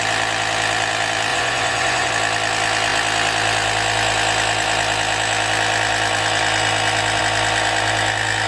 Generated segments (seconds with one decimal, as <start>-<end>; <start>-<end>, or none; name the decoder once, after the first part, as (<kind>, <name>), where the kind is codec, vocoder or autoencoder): 1.3-2.1 (vocoder, Vocos)